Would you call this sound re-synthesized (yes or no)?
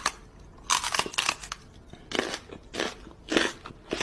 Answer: no